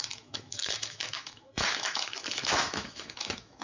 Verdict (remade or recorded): remade